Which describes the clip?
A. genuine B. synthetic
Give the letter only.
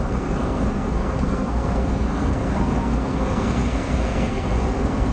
B